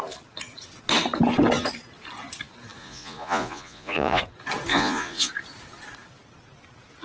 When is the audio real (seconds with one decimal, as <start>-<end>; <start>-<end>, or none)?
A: 0.0-2.8; 4.2-4.7; 5.3-7.0